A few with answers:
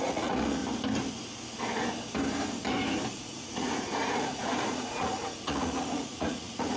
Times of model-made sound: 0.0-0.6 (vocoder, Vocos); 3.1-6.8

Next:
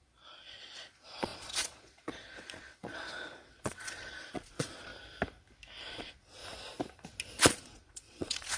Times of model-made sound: 0.0-4.9 (vocoder, Vocos); 5.8-6.4; 7.4-8.6

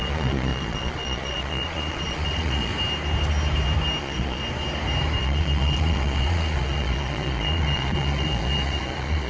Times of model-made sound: 0.0-2.7 (vocoder, Vocos); 4.0-4.4; 5.2-9.3